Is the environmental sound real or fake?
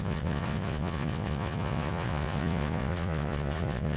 fake